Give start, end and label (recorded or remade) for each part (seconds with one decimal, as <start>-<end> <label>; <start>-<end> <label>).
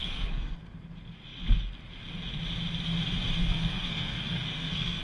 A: 0.0-0.6 remade; 0.6-3.4 recorded; 3.4-5.0 remade